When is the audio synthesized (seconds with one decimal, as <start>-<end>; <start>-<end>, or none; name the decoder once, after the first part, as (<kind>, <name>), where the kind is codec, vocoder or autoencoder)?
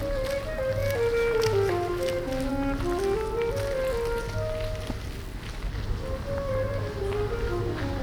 none